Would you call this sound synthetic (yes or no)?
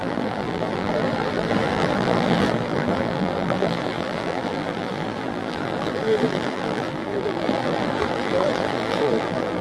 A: yes